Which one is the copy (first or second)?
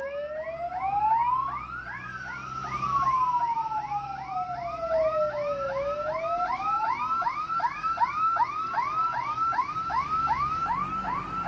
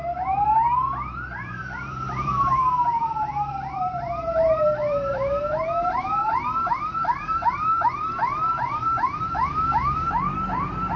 second